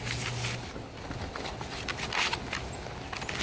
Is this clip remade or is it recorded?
recorded